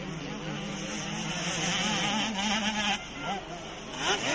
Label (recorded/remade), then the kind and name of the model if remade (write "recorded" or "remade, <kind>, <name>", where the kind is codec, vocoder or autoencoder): recorded